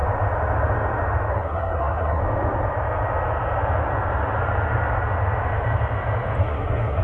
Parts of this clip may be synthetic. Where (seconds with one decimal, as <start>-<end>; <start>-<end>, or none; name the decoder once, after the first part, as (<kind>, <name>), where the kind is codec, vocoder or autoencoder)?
1.3-2.2 (codec, SNAC); 6.4-7.0

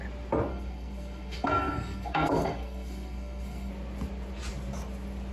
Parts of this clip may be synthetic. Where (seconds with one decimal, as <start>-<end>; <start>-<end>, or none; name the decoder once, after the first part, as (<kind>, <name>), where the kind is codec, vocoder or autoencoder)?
0.5-3.7 (codec, SNAC)

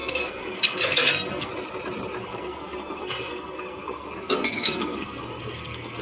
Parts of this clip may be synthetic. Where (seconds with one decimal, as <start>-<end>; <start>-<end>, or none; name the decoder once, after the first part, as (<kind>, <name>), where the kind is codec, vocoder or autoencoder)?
0.0-1.5 (codec, SNAC); 2.2-6.0

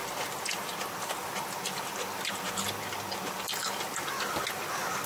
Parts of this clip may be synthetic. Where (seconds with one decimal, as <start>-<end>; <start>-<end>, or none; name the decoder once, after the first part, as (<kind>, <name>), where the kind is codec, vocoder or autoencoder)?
none